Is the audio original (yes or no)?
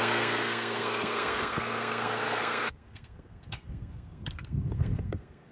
no